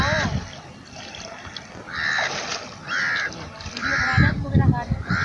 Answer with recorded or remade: recorded